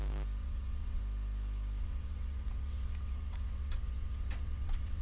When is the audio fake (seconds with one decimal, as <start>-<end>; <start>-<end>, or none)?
0.4-1.0; 1.8-5.0